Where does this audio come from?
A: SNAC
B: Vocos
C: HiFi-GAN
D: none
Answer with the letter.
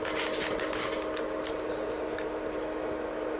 D